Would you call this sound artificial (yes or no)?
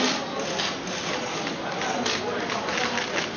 no